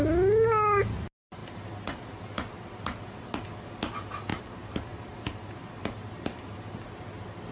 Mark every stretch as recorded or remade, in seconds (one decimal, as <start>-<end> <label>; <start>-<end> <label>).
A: 0.0-1.4 recorded; 1.4-2.2 remade; 2.2-4.3 recorded; 4.3-6.4 remade; 6.4-7.5 recorded